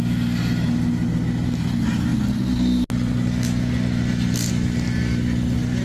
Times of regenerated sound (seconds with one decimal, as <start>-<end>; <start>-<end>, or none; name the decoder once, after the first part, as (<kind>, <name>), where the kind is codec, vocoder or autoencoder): none